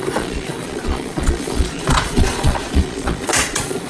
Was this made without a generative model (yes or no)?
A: no